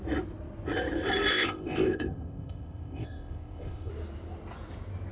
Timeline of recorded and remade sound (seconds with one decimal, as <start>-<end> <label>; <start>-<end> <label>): 0.0-1.3 recorded; 1.3-3.9 remade; 3.9-5.1 recorded